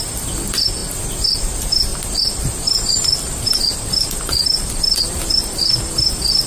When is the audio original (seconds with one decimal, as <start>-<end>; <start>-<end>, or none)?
0.0-0.8; 1.4-1.9; 5.8-6.5